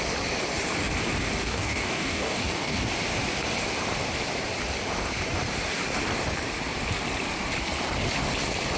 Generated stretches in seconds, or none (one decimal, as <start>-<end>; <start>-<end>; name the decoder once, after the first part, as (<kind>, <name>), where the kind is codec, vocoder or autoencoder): 1.4-2.8 (codec, DAC)